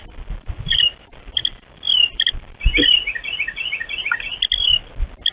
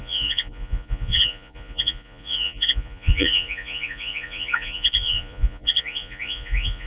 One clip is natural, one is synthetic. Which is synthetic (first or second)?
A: second